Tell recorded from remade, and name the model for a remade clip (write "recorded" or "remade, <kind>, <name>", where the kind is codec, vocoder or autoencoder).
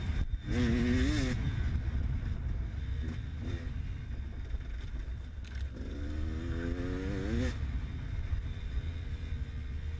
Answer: recorded